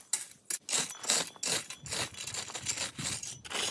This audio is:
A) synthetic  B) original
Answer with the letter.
B